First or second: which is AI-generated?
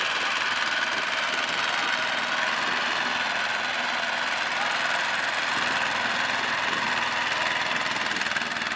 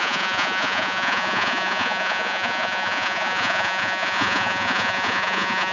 second